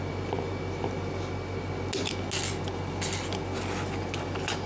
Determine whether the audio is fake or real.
real